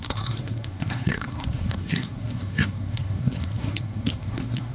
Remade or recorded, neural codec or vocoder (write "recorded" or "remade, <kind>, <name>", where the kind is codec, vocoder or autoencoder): remade, codec, SNAC